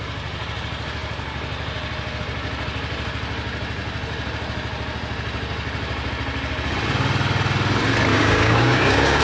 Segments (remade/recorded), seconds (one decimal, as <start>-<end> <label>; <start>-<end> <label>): 0.0-8.1 recorded; 8.1-9.2 remade